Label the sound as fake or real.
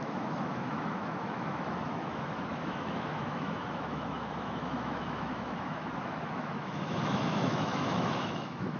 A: fake